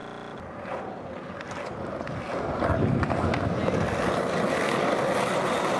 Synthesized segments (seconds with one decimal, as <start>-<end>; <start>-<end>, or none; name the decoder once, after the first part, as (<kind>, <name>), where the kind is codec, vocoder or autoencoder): none

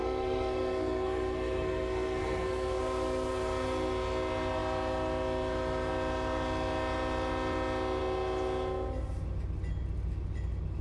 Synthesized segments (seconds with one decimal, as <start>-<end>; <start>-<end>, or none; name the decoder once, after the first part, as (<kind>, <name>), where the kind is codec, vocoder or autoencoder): 0.0-2.8 (codec, SNAC)

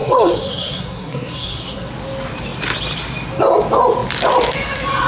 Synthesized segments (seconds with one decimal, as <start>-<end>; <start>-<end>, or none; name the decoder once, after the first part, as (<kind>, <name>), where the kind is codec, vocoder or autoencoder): 0.0-1.9 (codec, SNAC)

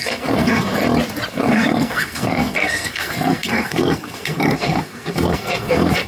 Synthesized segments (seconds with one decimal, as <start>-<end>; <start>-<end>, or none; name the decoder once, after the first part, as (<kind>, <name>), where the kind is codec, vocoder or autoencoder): 0.0-0.8 (codec, SNAC); 1.3-6.1

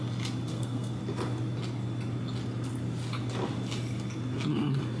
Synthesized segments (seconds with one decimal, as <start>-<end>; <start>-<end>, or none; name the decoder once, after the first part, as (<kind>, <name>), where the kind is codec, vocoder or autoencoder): 0.5-1.0 (codec, SNAC)